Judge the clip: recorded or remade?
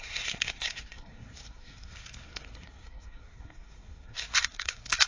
remade